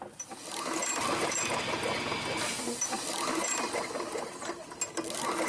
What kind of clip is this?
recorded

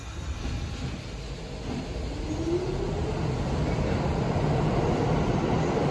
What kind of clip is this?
recorded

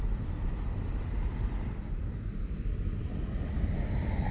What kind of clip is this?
recorded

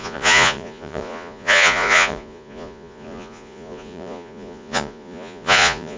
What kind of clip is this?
remade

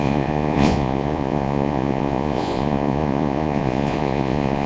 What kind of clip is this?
remade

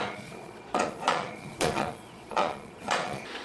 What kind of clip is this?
remade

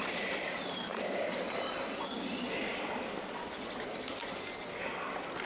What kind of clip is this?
recorded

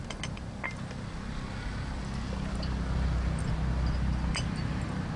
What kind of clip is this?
recorded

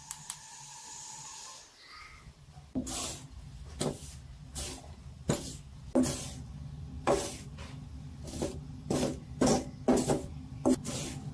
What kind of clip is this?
recorded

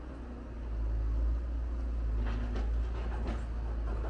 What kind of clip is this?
recorded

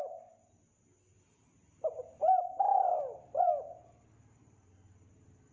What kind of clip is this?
recorded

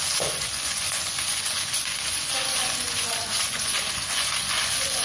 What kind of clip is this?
remade